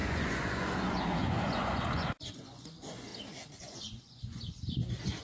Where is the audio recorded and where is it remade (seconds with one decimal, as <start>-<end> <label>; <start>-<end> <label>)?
0.0-3.1 remade; 3.1-3.6 recorded; 3.6-5.2 remade